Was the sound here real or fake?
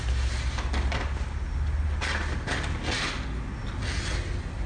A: real